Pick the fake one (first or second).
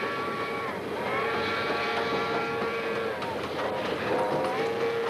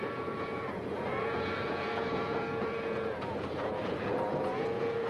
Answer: second